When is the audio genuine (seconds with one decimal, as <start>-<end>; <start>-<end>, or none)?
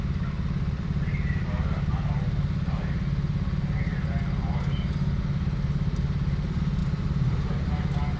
0.0-8.2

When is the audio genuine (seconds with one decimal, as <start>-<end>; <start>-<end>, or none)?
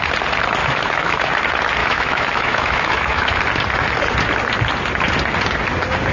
0.0-0.6; 1.3-1.8; 3.4-6.1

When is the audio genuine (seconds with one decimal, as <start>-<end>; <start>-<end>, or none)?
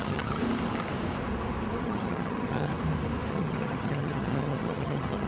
0.4-1.8; 2.7-3.3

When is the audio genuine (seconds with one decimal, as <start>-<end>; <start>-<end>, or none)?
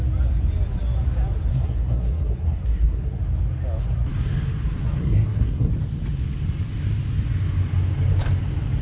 0.0-1.5; 3.2-5.0; 5.7-8.8